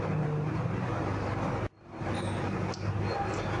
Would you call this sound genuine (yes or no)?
yes